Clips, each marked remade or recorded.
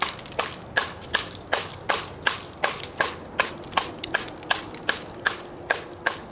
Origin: recorded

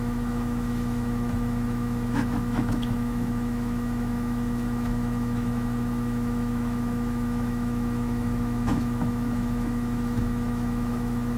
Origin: remade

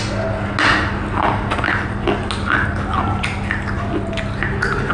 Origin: recorded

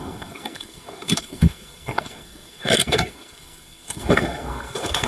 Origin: remade